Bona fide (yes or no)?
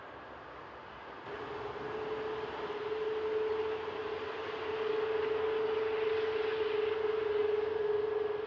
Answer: yes